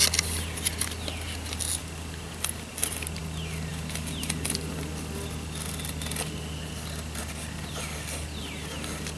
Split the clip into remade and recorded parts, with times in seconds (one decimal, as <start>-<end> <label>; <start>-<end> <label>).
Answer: 0.0-9.2 recorded